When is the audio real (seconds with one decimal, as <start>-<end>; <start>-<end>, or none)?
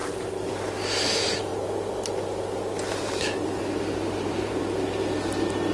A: 0.0-5.7